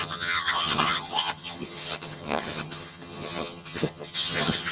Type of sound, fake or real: fake